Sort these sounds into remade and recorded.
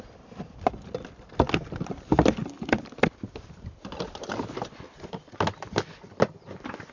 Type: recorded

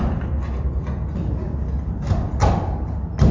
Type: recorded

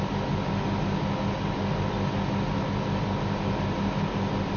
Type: recorded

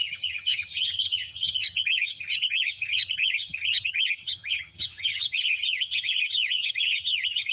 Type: remade